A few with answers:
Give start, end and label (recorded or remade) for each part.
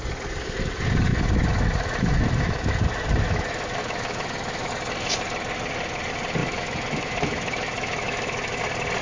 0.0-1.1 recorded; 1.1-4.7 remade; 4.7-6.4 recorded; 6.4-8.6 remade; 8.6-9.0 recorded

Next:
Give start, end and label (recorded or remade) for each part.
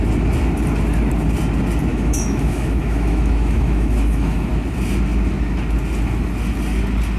0.0-1.9 recorded; 1.9-4.5 remade; 4.5-7.2 recorded